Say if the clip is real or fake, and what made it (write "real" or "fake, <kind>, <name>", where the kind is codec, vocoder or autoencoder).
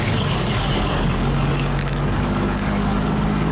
fake, codec, DAC